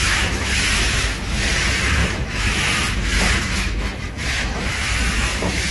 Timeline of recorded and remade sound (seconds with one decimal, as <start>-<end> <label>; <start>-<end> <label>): 0.0-5.7 remade